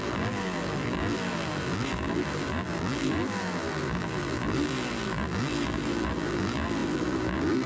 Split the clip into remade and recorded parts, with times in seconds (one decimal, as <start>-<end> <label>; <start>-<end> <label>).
0.0-7.7 remade